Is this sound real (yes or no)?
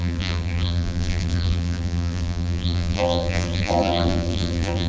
no